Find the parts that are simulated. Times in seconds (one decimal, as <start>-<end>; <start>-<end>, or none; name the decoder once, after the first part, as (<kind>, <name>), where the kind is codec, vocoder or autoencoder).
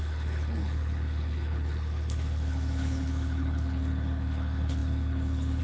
0.0-5.6 (codec, HILCodec)